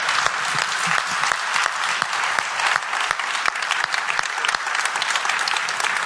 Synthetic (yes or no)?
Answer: no